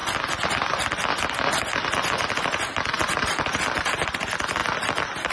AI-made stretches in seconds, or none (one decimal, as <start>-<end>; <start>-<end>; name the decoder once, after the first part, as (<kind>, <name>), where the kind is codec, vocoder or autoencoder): 3.2-4.6 (vocoder, BigVGAN v2)